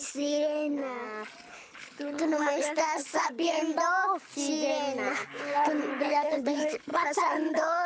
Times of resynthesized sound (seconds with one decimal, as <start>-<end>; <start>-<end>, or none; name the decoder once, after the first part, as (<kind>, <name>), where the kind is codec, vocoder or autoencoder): 0.0-0.8 (codec, HILCodec); 1.5-3.6; 5.1-7.9